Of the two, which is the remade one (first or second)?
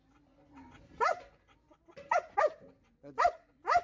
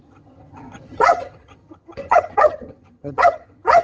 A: second